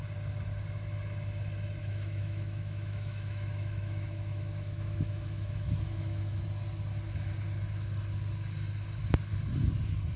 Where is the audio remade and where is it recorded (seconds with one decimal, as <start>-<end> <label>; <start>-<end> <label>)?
0.0-1.8 recorded; 1.8-6.4 remade; 6.4-10.2 recorded